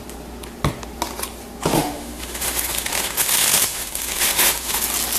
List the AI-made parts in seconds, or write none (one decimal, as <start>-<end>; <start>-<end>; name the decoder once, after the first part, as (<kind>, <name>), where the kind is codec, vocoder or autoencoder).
1.7-4.8 (autoencoder, DAC-VAE)